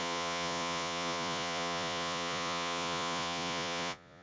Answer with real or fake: fake